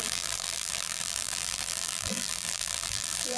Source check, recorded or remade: remade